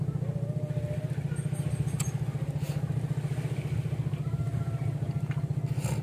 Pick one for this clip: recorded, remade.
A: recorded